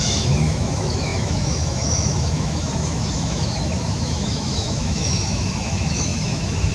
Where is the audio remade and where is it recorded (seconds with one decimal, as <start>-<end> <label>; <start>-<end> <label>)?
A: 0.0-6.7 remade